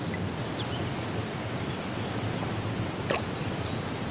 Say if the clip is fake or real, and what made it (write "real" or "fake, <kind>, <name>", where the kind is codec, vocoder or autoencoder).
real